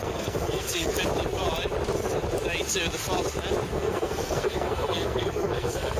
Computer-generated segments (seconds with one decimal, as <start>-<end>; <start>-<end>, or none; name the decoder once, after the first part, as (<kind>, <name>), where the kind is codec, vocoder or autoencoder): 0.0-0.9 (codec, SNAC); 3.7-6.0